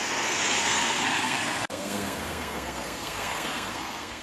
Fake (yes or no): yes